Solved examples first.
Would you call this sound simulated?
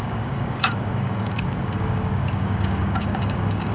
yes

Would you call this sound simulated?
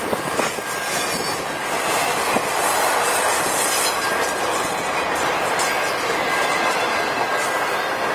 no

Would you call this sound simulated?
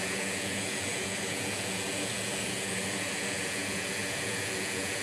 yes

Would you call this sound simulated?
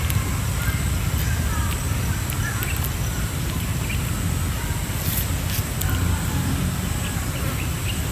no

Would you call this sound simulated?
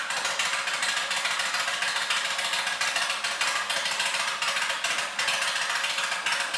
no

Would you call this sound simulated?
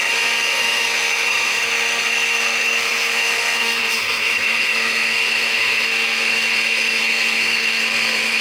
yes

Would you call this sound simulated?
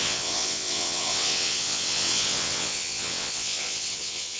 yes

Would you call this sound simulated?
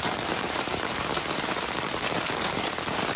yes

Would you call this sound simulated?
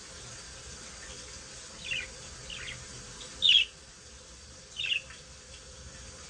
no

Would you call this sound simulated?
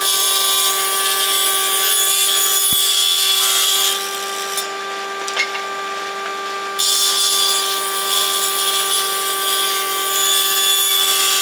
no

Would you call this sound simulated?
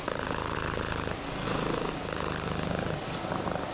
no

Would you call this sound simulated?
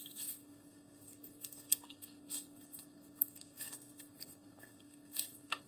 yes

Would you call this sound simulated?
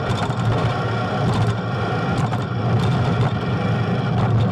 no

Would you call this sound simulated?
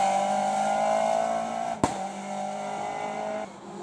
no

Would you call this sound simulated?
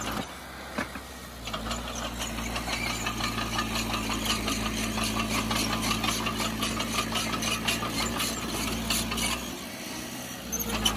no